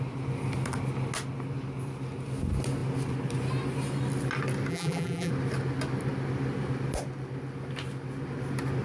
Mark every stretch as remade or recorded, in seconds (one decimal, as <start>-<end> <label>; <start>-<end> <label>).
0.0-4.7 recorded; 4.7-5.3 remade; 5.3-8.8 recorded